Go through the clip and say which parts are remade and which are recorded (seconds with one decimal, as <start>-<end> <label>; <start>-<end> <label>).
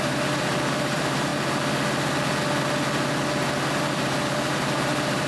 0.0-1.3 remade; 1.3-3.8 recorded; 3.8-5.3 remade